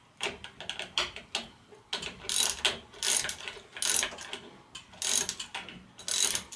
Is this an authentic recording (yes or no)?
yes